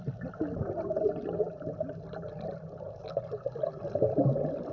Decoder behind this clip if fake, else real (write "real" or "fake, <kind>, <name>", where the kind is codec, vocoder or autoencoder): real